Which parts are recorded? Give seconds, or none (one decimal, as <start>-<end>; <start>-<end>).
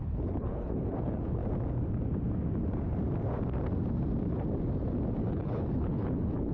1.4-5.3